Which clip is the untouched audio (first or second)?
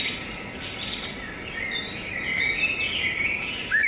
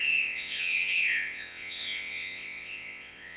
first